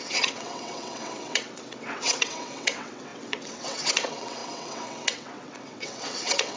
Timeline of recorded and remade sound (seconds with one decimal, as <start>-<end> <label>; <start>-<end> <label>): 0.0-6.6 remade